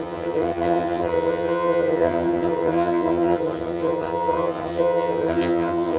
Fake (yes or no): yes